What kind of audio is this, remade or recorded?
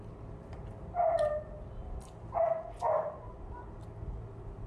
recorded